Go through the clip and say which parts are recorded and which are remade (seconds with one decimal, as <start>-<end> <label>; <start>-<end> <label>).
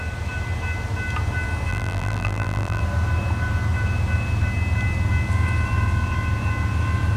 0.0-1.7 recorded; 1.7-2.8 remade; 2.8-7.2 recorded